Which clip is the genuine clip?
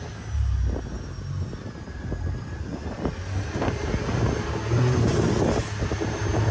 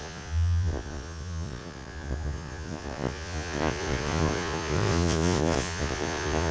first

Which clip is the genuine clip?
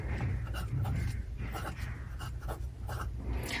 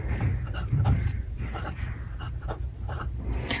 first